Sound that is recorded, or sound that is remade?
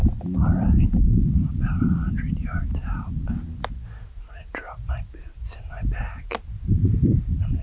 recorded